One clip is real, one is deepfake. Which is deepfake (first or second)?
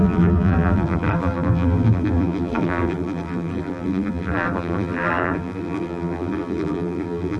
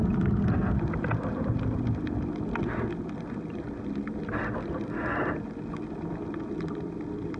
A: first